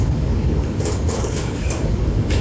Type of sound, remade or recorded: remade